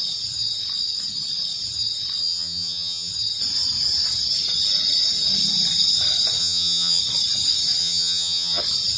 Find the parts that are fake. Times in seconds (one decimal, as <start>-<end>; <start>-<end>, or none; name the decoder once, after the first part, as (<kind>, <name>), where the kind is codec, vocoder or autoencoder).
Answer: 2.2-3.1 (vocoder, HiFi-GAN); 6.4-7.0; 7.8-8.6